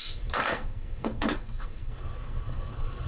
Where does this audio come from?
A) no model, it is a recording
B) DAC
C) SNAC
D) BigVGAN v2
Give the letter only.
C